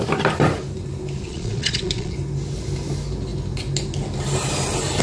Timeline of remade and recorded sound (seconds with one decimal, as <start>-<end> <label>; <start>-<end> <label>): 0.0-1.3 recorded; 1.3-2.1 remade; 2.1-5.0 recorded